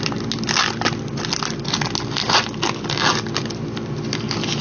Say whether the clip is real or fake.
real